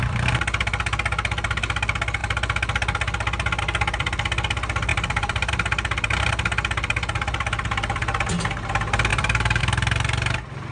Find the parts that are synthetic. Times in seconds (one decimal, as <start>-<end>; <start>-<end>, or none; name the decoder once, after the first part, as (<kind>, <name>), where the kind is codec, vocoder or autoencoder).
4.9-5.5 (vocoder, BigVGAN v2); 9.1-9.6